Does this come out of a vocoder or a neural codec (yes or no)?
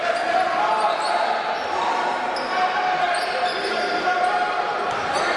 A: no